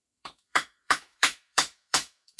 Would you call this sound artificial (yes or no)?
yes